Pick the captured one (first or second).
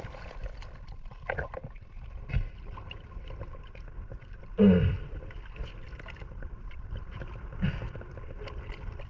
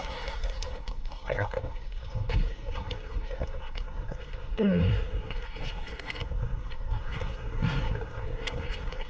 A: first